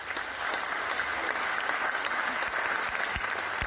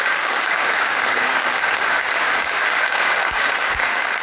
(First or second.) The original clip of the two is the first